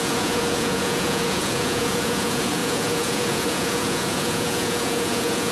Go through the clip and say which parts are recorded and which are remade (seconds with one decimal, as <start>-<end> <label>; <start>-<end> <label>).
0.0-5.5 remade